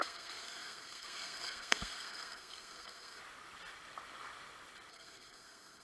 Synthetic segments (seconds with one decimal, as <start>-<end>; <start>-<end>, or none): 0.0-3.2; 4.9-5.8